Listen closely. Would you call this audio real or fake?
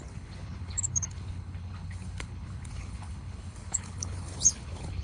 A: fake